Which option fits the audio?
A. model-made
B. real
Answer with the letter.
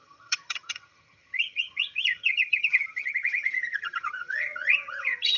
A